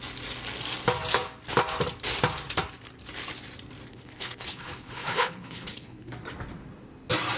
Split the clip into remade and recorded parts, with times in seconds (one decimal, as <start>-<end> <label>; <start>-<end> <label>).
0.0-3.9 recorded; 3.9-6.1 remade; 6.1-7.4 recorded